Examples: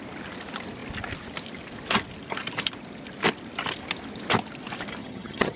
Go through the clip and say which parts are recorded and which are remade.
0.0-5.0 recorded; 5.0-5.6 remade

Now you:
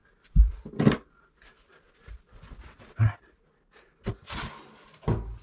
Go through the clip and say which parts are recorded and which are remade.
0.0-5.4 recorded

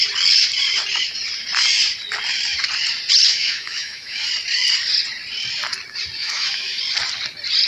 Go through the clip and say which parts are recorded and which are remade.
0.0-3.3 recorded; 3.3-4.3 remade; 4.3-6.2 recorded; 6.2-6.8 remade; 6.8-7.7 recorded

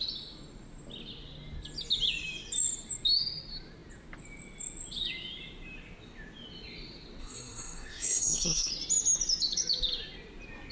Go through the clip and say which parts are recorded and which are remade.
0.0-7.2 recorded; 7.2-8.7 remade; 8.7-10.7 recorded

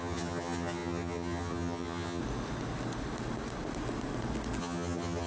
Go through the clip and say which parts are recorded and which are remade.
0.0-2.2 remade; 2.2-4.6 recorded; 4.6-5.3 remade

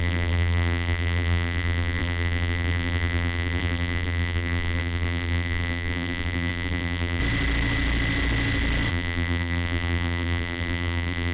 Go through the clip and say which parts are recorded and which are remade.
0.0-7.2 remade; 7.2-8.9 recorded; 8.9-11.3 remade

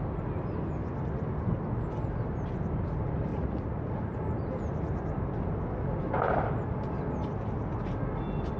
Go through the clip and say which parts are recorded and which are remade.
0.0-3.3 recorded; 3.3-4.2 remade; 4.2-8.6 recorded

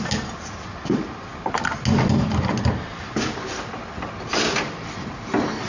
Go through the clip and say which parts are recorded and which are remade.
0.0-5.7 recorded